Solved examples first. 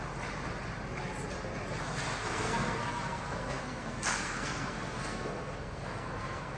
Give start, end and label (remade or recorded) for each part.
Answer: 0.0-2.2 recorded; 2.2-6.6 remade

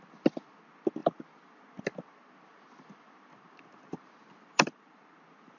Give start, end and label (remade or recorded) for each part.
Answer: 0.0-5.6 recorded

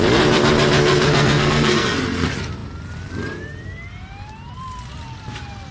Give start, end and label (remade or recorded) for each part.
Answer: 0.0-0.8 recorded; 0.8-2.0 remade; 2.0-5.7 recorded